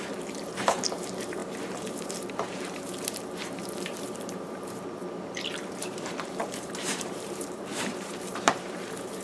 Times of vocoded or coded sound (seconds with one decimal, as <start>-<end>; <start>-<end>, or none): 0.0-5.0; 5.5-9.2